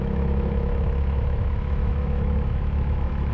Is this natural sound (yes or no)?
no